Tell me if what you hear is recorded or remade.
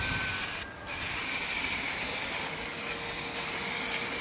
remade